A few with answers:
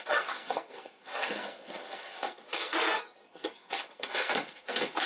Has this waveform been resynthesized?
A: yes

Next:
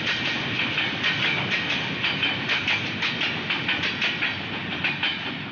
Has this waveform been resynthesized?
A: no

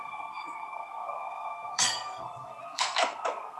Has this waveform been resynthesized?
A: yes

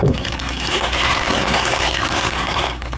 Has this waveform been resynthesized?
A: yes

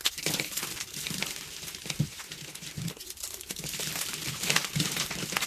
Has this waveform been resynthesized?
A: no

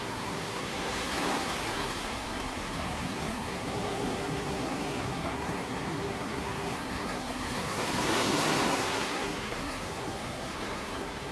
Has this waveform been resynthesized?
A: yes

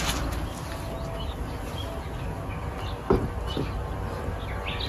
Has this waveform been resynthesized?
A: no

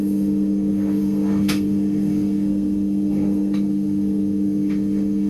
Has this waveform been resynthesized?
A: yes